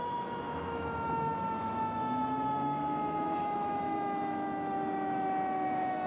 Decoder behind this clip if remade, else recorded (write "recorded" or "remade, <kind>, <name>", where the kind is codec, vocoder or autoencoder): remade, autoencoder, DAC-VAE